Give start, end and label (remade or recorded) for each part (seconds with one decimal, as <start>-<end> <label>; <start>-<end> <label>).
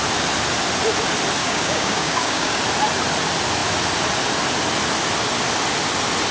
0.0-1.4 recorded; 1.4-2.6 remade; 2.6-6.3 recorded